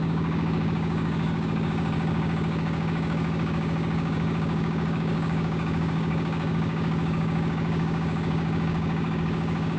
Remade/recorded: remade